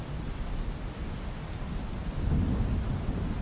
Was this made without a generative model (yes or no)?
yes